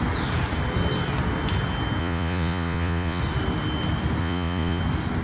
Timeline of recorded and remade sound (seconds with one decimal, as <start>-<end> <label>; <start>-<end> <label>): 0.0-2.0 recorded; 2.0-3.2 remade; 3.2-4.2 recorded; 4.2-4.8 remade; 4.8-5.2 recorded